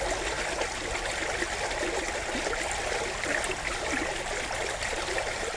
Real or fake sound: real